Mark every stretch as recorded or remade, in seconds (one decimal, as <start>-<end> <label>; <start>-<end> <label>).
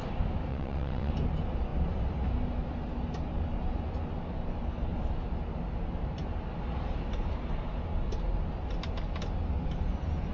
0.0-0.5 recorded; 0.5-1.1 remade; 1.1-10.3 recorded